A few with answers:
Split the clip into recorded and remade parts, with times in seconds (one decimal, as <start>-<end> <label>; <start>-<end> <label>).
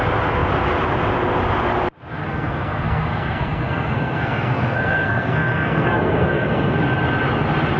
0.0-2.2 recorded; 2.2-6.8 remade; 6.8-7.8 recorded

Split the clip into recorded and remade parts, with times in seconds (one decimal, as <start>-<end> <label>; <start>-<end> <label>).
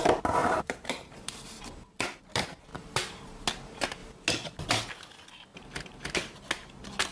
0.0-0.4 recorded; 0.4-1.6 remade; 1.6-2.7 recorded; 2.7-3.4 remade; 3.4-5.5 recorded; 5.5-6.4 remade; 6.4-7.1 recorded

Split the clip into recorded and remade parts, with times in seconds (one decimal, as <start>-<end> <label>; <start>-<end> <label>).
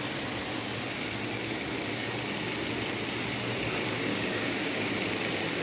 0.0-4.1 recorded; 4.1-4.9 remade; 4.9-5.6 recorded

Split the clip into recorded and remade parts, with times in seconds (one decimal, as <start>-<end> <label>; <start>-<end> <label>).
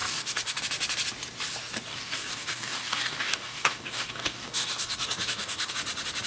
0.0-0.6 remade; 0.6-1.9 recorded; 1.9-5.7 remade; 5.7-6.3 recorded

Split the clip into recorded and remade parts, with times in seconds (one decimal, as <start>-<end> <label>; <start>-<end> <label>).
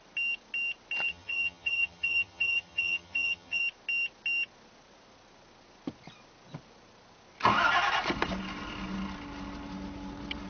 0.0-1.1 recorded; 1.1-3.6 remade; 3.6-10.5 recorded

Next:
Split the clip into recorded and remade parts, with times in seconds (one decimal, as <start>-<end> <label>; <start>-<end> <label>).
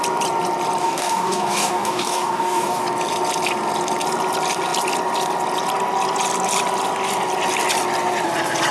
0.0-0.8 recorded; 0.8-2.8 remade; 2.8-8.7 recorded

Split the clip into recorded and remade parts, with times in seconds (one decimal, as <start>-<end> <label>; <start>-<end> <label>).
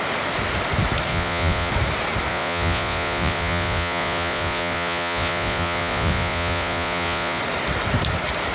0.0-1.1 recorded; 1.1-1.7 remade; 1.7-2.3 recorded; 2.3-7.4 remade; 7.4-8.5 recorded